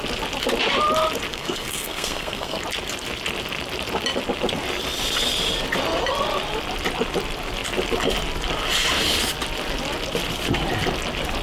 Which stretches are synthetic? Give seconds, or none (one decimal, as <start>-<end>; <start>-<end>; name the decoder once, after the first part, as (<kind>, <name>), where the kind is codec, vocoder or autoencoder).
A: 1.3-2.6 (codec, SNAC)